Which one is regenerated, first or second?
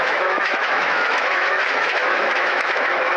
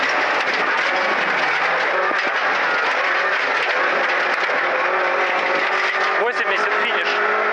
first